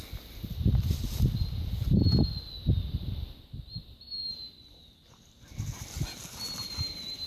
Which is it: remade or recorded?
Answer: recorded